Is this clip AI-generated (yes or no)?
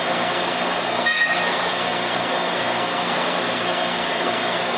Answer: yes